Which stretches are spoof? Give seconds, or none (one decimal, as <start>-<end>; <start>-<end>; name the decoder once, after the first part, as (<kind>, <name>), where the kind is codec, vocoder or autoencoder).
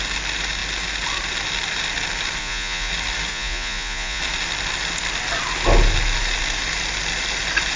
2.4-2.9 (vocoder, Vocos); 3.3-4.2